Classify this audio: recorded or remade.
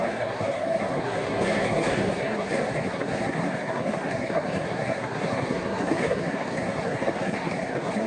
remade